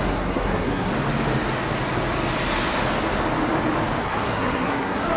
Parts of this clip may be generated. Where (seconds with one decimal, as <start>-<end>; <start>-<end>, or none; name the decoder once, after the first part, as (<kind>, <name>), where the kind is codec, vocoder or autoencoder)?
0.0-0.9 (codec, SNAC); 4.0-5.2